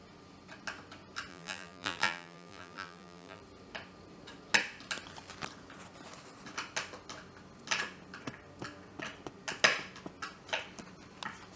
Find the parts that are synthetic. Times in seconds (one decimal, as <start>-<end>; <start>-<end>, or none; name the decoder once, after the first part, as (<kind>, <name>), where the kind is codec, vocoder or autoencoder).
1.3-3.4 (vocoder, BigVGAN v2)